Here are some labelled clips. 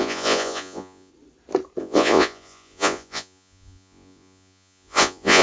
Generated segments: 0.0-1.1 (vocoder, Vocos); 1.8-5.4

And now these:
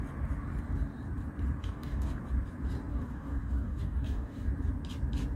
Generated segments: 1.6-2.2 (codec, DAC); 2.9-4.5

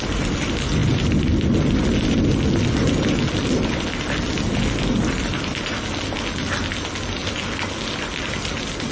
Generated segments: none

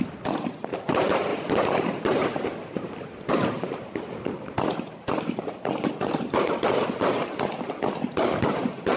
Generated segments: none

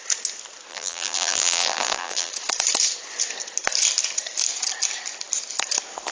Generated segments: 0.7-2.3 (vocoder, BigVGAN v2)

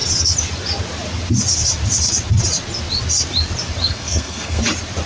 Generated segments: 3.8-4.6 (codec, SNAC)

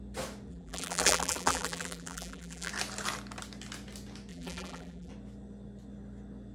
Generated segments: 0.5-2.7 (vocoder, BigVGAN v2); 4.3-5.1